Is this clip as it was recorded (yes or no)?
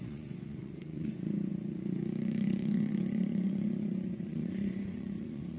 no